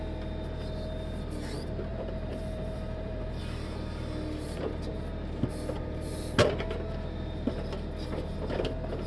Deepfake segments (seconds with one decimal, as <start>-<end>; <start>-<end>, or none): 1.9-3.4